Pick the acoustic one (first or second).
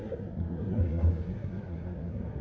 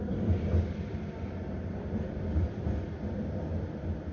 second